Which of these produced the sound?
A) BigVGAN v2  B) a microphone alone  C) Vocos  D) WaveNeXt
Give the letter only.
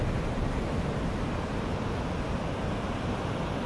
B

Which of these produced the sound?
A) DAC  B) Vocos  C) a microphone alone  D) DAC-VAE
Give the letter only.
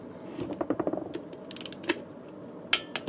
C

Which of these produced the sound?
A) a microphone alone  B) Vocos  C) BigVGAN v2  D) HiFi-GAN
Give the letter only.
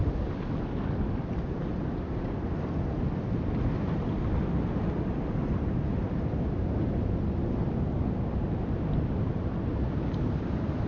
A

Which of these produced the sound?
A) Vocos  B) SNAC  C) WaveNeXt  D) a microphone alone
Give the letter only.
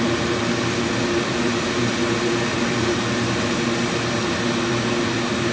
D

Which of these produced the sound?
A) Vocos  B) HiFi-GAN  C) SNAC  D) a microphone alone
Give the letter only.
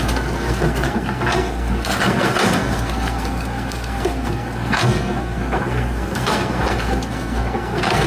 C